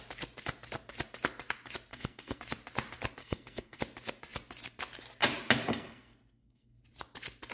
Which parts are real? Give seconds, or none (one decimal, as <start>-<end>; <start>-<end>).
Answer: 0.0-1.9; 2.4-3.2; 3.8-5.7; 6.8-7.5